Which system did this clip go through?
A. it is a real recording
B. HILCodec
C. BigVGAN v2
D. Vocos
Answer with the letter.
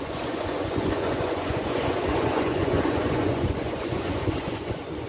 D